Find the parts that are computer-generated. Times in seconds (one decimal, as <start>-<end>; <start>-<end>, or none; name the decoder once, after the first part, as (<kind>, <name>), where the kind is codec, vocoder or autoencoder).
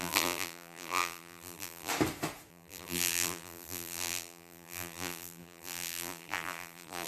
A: 0.0-1.9 (vocoder, BigVGAN v2); 2.5-7.1